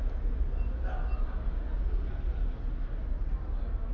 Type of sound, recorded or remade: recorded